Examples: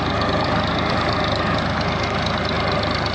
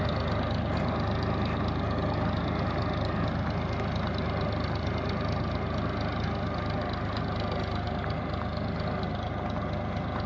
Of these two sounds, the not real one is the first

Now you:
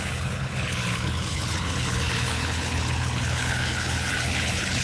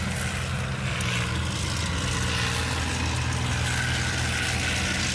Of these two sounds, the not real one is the first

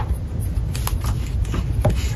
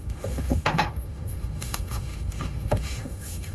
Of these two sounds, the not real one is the second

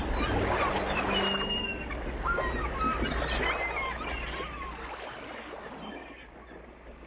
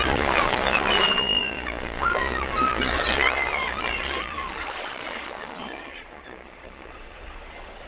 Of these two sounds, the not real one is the second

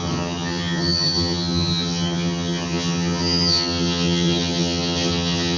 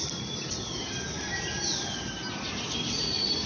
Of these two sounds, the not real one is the first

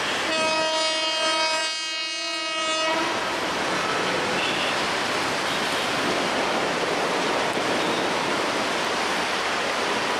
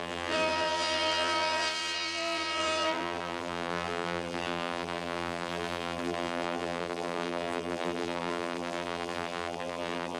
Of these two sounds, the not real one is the second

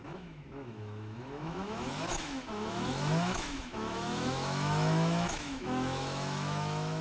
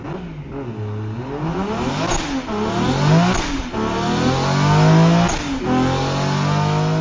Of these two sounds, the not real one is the first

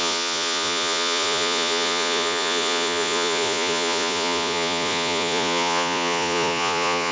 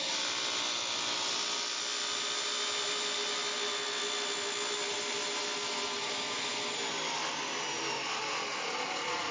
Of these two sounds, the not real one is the first